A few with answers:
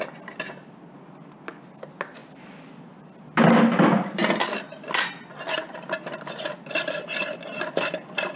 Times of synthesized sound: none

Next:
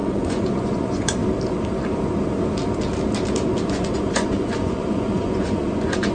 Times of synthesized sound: 0.0-1.2 (vocoder, Vocos); 3.7-6.1

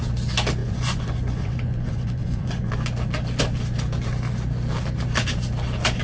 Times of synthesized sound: 0.6-2.7 (vocoder, Vocos)

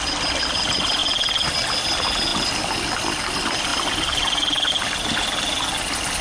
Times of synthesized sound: none

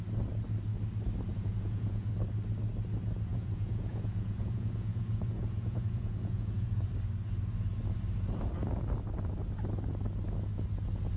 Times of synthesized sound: 1.3-2.1 (vocoder, Vocos); 3.3-6.9

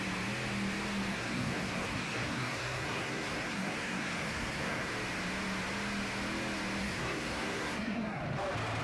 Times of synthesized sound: 1.1-4.9 (codec, SNAC); 6.8-8.2

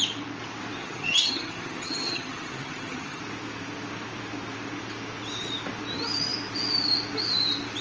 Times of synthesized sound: 0.8-3.2 (vocoder, HiFi-GAN)